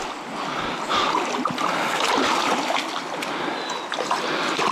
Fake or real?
real